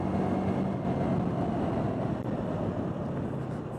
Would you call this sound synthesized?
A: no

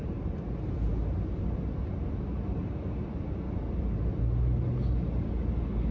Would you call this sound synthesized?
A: no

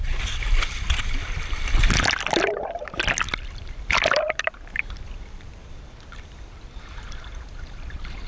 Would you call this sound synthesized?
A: yes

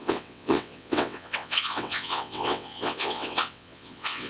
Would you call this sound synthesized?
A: yes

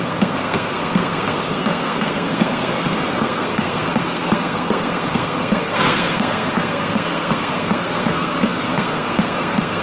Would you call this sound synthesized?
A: yes